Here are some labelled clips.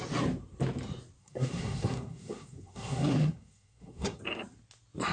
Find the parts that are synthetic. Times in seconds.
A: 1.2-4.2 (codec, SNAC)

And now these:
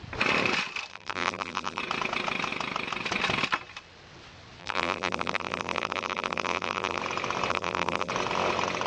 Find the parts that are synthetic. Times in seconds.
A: 0.9-1.8 (vocoder, BigVGAN v2); 4.6-7.0; 7.5-8.1

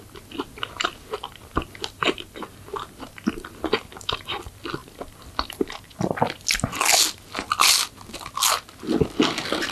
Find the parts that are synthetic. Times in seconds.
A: none

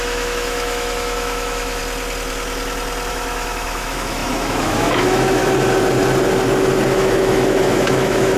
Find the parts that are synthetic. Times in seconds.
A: 0.0-1.8 (autoencoder, DAC-VAE); 3.1-5.4; 6.9-8.4

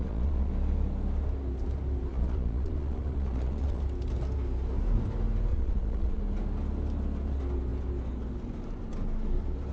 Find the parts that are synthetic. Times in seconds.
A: 0.0-0.5 (vocoder, Vocos); 2.1-3.8; 5.5-6.2

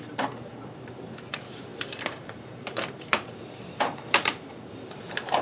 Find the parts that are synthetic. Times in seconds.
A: 0.0-5.4 (vocoder, BigVGAN v2)

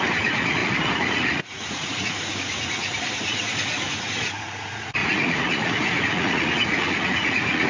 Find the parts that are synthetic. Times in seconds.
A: 0.0-7.7 (vocoder, Vocos)

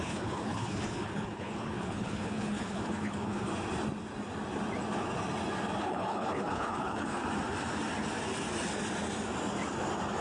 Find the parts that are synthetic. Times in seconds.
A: 0.0-3.5 (codec, HILCodec); 5.8-7.2